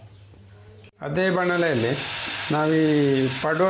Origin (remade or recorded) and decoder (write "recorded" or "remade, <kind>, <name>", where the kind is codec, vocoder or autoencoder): recorded